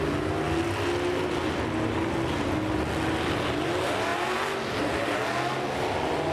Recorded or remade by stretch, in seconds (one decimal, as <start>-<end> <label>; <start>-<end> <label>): 0.0-6.3 recorded